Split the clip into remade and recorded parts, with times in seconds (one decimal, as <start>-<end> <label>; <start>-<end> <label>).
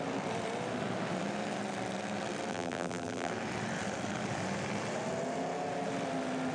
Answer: 0.0-2.5 recorded; 2.5-3.3 remade; 3.3-6.5 recorded